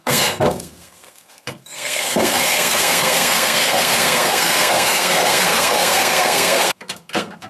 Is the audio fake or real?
fake